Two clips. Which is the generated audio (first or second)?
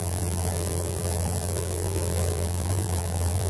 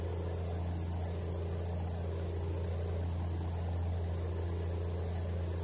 first